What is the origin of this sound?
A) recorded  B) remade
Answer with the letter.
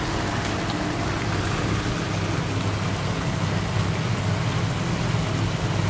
A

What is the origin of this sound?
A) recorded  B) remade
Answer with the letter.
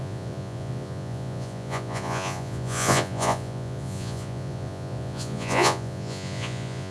B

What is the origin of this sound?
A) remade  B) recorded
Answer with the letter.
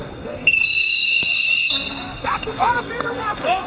A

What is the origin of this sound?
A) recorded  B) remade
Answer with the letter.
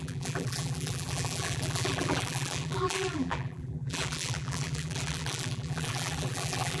B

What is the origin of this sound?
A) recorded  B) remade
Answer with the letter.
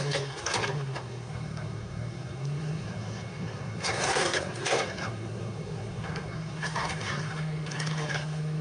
B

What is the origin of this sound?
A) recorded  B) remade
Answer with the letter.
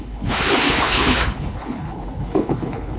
B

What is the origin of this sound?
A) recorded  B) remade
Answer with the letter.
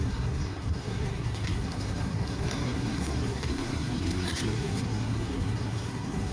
B